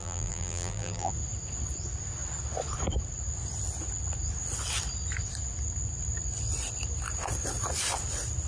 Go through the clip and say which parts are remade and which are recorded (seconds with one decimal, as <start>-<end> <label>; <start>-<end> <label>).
0.0-1.1 remade; 1.1-8.5 recorded